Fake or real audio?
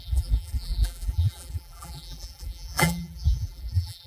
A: fake